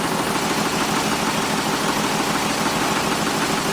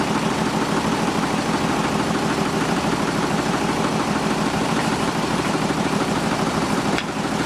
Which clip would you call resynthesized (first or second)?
second